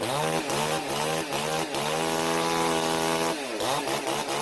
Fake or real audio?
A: real